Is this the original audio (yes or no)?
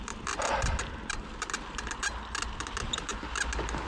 yes